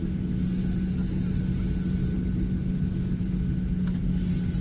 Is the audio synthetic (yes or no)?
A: no